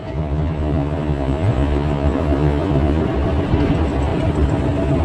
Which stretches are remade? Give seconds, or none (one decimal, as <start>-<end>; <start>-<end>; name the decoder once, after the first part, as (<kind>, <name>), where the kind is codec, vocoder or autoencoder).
0.0-3.0 (vocoder, Vocos)